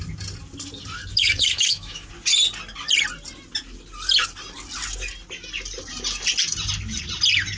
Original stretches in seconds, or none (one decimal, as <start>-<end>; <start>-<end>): 0.0-1.1; 2.1-7.6